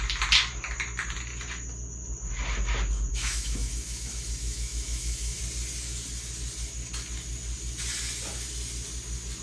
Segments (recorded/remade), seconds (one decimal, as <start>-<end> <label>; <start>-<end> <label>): 0.0-3.1 recorded; 3.1-5.4 remade; 5.4-9.4 recorded